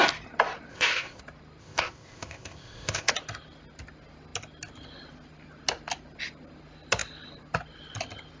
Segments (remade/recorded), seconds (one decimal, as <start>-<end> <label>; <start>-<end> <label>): 0.0-0.7 recorded; 0.7-1.2 remade; 1.2-1.6 recorded; 1.6-3.1 remade; 3.1-8.4 recorded